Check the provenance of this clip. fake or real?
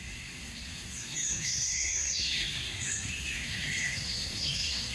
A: fake